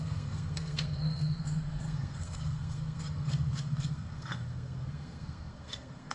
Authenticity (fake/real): fake